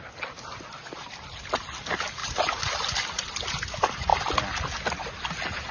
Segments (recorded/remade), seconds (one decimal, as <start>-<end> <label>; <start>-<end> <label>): 0.0-5.7 recorded